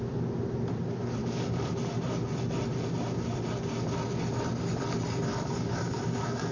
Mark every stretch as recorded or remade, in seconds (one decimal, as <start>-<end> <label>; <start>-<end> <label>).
0.0-1.2 recorded; 1.2-1.7 remade; 1.7-5.3 recorded; 5.3-6.5 remade